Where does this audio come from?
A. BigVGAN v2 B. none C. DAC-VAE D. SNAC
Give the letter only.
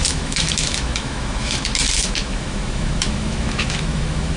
C